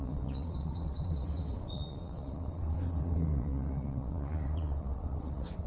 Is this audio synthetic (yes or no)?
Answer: yes